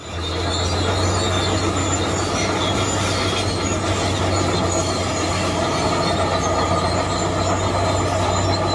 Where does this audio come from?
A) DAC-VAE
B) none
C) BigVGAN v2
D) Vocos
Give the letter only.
B